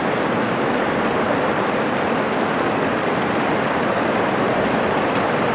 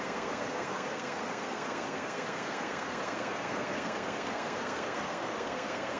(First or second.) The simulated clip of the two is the second